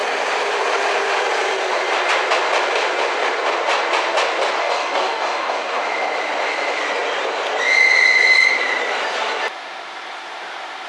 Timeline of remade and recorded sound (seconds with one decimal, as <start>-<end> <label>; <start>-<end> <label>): 0.0-4.6 recorded; 4.6-5.8 remade; 5.8-10.9 recorded